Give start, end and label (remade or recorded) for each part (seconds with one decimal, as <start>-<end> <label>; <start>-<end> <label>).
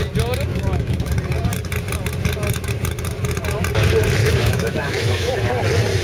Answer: 0.0-0.5 recorded; 0.5-1.1 remade; 1.1-4.2 recorded; 4.2-5.4 remade; 5.4-6.0 recorded